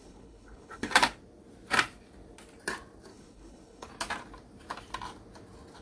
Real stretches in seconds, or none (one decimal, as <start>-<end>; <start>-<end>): 0.9-3.1; 3.9-5.8